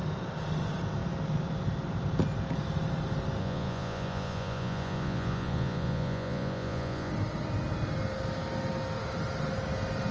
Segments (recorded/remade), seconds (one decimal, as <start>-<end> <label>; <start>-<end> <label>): 0.0-3.4 recorded; 3.4-7.1 remade; 7.1-10.1 recorded